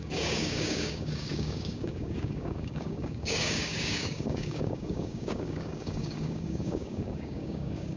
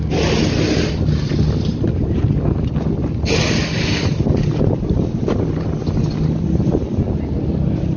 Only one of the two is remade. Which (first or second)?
first